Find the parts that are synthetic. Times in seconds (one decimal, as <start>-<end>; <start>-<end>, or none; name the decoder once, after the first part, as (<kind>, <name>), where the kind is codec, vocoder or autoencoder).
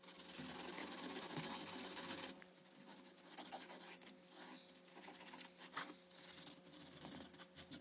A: 0.8-3.3 (vocoder, Vocos)